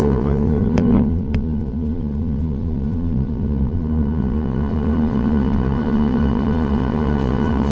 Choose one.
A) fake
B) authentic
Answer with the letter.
A